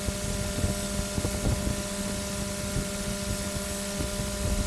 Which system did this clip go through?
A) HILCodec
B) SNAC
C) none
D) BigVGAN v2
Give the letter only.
D